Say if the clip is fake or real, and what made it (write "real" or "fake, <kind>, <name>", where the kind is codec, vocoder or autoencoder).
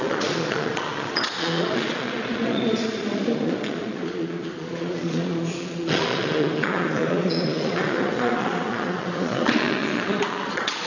fake, vocoder, Vocos